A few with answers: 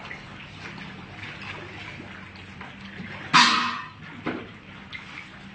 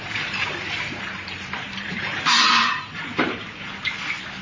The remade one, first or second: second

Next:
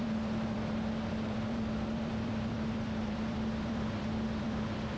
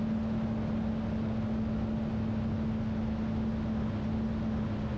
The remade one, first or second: first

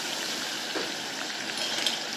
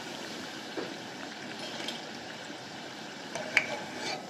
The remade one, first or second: second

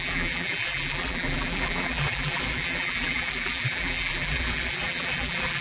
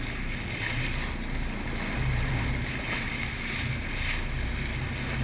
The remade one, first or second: first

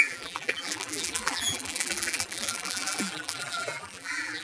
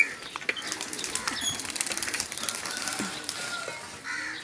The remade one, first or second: first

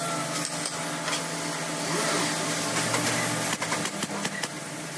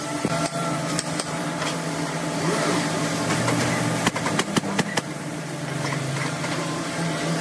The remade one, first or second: second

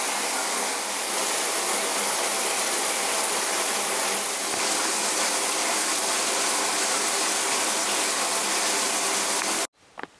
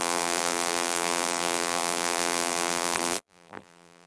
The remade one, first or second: second